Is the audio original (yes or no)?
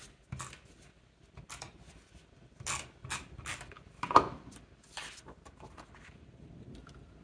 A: yes